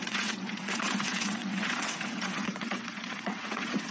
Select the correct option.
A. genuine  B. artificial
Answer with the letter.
B